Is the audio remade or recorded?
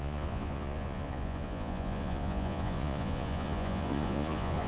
remade